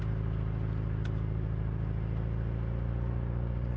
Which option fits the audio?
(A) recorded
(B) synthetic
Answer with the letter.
A